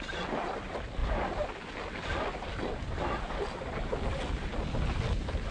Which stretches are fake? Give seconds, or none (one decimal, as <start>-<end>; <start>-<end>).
none